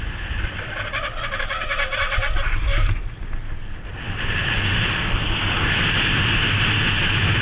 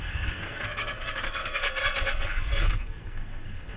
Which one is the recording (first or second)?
first